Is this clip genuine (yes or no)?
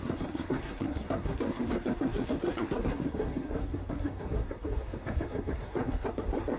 no